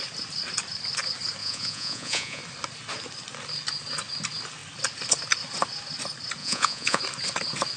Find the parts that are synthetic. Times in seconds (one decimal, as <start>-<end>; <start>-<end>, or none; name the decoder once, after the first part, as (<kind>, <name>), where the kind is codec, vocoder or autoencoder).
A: 1.4-2.4 (vocoder, Vocos); 6.4-7.0